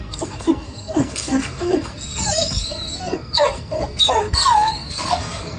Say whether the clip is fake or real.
fake